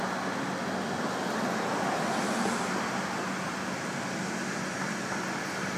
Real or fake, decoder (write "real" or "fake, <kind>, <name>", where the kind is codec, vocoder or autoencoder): real